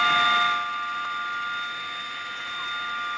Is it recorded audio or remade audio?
recorded